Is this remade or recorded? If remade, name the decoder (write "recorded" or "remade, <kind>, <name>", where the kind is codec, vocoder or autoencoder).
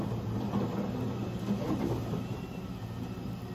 recorded